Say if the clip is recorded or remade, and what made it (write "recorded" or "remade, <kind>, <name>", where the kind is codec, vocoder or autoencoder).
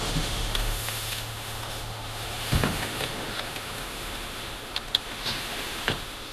remade, autoencoder, DAC-VAE